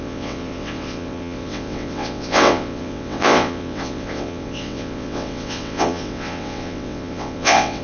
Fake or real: fake